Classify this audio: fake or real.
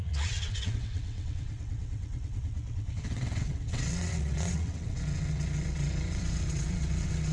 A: fake